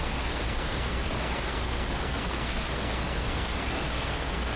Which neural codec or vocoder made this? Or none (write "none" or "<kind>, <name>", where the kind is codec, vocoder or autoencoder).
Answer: codec, SNAC